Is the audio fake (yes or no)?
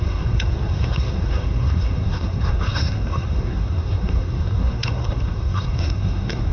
yes